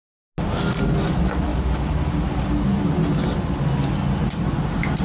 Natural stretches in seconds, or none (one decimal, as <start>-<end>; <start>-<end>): 0.0-5.0